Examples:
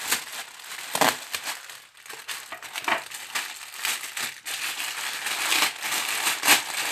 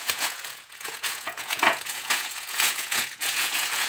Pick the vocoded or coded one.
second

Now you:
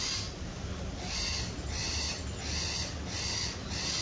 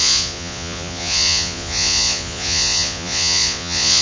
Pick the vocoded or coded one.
second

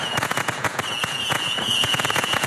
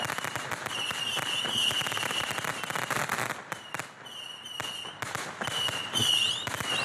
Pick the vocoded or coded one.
first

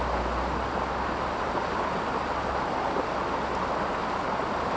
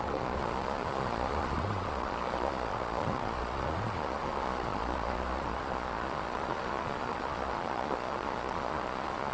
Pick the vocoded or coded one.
second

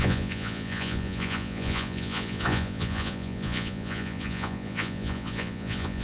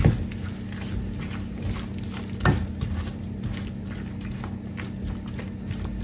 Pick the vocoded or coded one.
first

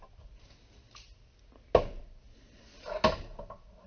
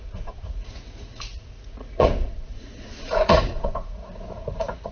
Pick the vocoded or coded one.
second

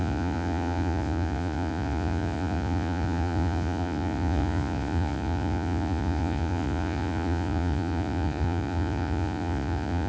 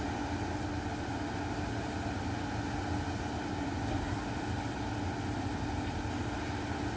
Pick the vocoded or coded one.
first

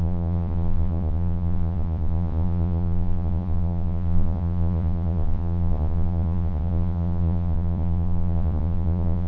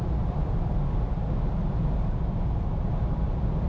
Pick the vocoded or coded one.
first